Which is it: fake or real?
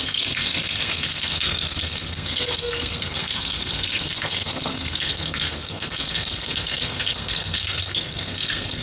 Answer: fake